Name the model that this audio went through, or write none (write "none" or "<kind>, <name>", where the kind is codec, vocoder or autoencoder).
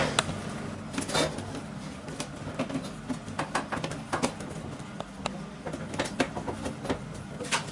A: none